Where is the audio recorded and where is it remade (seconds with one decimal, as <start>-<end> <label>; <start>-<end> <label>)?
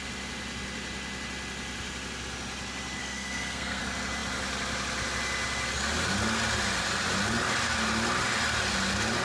0.0-3.0 recorded; 3.0-3.8 remade; 3.8-9.2 recorded